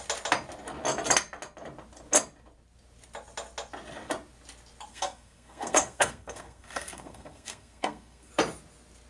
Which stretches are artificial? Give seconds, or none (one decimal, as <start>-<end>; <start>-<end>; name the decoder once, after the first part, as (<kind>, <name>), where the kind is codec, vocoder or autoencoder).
4.9-8.3 (codec, SNAC)